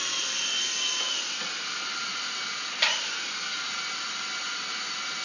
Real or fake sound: real